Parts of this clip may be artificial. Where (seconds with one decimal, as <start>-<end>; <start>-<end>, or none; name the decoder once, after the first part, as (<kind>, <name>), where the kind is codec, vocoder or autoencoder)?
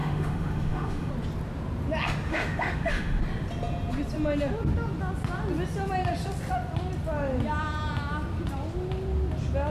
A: 0.0-1.1 (autoencoder, DAC-VAE); 2.3-3.2